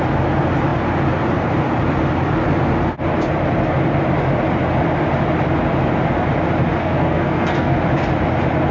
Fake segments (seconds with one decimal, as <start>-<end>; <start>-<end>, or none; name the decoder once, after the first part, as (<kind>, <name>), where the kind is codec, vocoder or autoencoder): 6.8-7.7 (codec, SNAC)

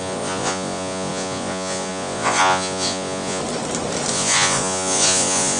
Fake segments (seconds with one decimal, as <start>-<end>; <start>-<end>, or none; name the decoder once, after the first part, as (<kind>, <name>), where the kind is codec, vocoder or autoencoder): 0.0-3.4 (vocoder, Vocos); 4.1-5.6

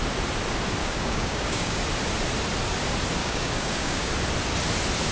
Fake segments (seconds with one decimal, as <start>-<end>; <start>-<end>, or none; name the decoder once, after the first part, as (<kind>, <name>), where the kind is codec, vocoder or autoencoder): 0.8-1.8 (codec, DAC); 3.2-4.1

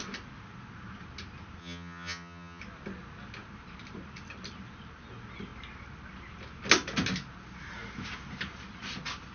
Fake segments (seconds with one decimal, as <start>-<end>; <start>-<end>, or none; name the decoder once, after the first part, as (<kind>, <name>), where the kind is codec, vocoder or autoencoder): 1.6-2.6 (vocoder, HiFi-GAN)

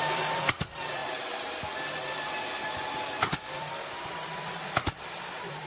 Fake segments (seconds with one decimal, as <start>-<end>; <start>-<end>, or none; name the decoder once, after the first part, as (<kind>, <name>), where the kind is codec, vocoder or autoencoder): 0.0-1.0 (vocoder, BigVGAN v2); 3.7-5.7

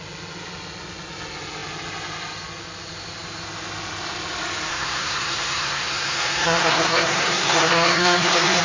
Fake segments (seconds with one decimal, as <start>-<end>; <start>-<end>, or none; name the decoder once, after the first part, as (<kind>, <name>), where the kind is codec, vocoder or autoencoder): 4.7-8.6 (codec, SNAC)

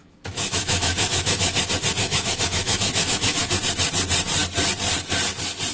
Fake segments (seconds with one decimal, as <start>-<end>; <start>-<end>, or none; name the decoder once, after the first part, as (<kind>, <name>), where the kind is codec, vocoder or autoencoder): 0.0-1.6 (autoencoder, DAC-VAE); 2.0-3.5

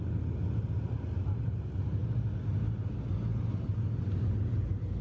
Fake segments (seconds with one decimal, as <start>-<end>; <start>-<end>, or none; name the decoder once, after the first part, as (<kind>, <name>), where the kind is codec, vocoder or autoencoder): none